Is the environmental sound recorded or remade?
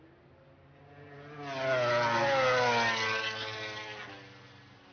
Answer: recorded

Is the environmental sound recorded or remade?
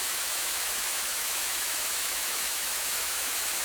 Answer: remade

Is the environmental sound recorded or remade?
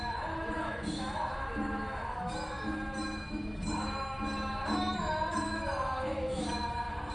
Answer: remade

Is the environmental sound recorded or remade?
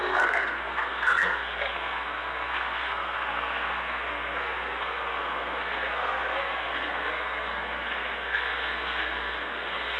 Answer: remade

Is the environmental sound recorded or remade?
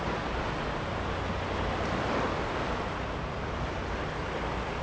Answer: recorded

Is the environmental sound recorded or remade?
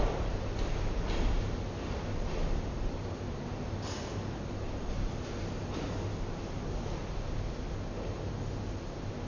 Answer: recorded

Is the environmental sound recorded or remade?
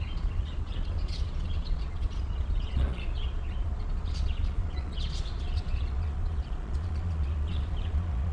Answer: remade